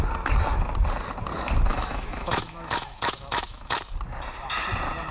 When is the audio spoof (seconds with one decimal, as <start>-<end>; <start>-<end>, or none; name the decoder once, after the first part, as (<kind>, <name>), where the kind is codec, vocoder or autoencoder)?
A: 1.7-3.8 (autoencoder, DAC-VAE)

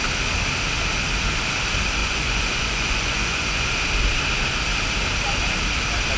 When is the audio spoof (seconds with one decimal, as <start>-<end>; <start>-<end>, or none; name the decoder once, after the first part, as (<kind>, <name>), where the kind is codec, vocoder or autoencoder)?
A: 2.0-3.7 (vocoder, Vocos)

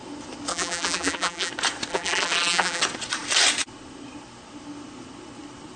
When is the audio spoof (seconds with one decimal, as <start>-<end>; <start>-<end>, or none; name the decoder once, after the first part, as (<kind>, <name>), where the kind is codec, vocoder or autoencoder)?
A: 0.5-1.5 (vocoder, BigVGAN v2); 1.9-2.8